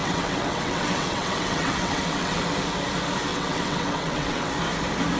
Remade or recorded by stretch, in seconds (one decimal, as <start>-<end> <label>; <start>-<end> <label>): 0.0-2.4 remade; 2.4-3.3 recorded; 3.3-4.5 remade; 4.5-5.2 recorded